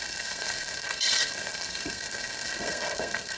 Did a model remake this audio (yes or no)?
yes